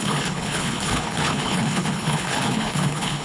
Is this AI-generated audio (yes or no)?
yes